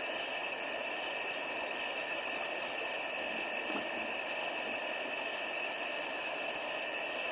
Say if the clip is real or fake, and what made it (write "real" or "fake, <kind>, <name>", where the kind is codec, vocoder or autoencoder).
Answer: real